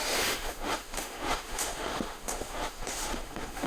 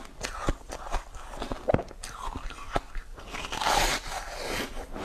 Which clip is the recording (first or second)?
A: second